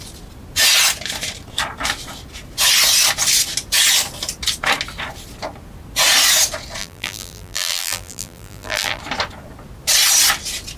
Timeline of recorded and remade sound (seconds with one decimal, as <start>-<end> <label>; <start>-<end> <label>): 0.0-6.8 recorded; 6.8-9.0 remade; 9.0-10.8 recorded